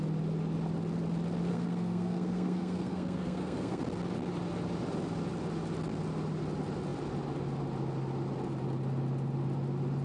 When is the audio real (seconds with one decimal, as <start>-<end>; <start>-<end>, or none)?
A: 0.0-1.5; 3.8-10.0